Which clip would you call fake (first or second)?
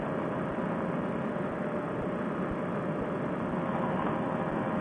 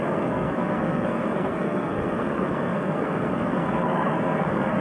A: second